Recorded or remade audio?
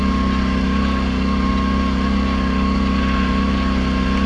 recorded